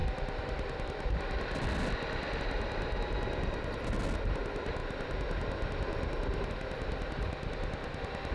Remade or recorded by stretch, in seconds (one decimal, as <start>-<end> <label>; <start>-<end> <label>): 0.0-8.3 recorded